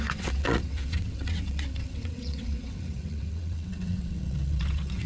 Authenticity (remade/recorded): remade